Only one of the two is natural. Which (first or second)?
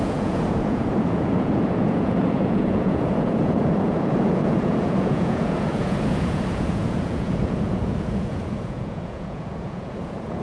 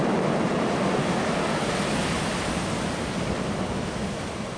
second